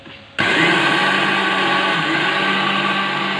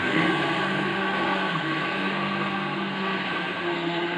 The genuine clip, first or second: first